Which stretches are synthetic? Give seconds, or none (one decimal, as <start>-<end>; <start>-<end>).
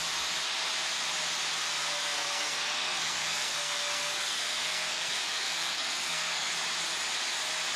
1.8-6.5